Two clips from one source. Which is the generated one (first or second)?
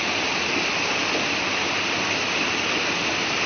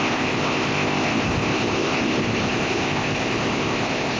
second